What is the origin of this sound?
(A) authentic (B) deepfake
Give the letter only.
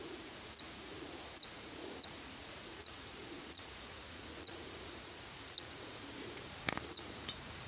B